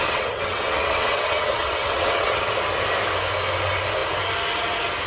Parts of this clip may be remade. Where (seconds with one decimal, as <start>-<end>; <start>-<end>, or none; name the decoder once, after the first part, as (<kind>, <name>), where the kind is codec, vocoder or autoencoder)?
0.0-2.5 (vocoder, WaveNeXt)